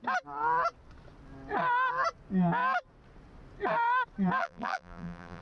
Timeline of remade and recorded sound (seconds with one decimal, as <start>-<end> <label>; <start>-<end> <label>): 0.0-4.4 recorded; 4.4-5.4 remade